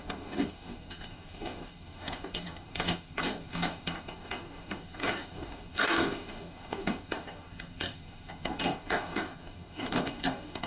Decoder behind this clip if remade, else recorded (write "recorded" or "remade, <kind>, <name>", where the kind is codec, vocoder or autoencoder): remade, codec, DAC